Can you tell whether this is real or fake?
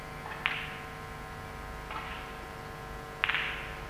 real